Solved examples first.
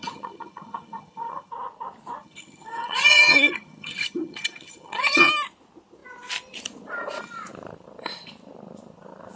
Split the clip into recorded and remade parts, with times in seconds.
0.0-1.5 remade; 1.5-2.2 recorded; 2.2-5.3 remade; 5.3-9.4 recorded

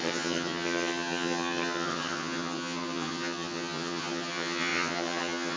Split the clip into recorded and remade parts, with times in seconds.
0.0-5.6 remade